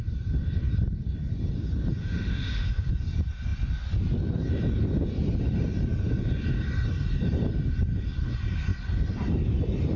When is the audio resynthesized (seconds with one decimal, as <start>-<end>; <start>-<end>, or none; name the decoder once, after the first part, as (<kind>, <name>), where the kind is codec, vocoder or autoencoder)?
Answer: 2.0-2.9 (autoencoder, DAC-VAE)